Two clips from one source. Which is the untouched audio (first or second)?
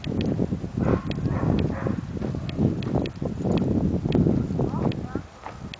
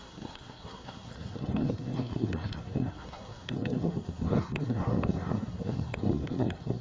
first